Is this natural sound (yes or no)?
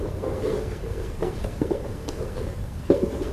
no